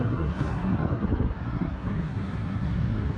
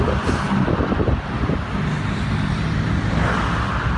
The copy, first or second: first